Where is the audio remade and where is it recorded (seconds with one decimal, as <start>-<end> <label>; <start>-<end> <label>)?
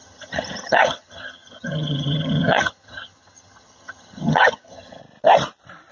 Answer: 0.0-5.0 remade; 5.0-5.9 recorded